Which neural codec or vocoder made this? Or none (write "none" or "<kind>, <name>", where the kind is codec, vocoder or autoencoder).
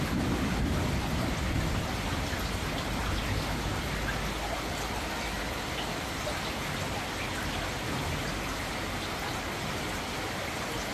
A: none